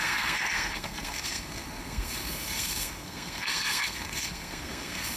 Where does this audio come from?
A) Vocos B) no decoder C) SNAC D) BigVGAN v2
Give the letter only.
C